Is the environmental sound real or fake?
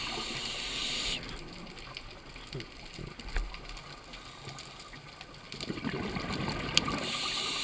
real